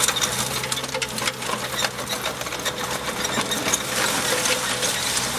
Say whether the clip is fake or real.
real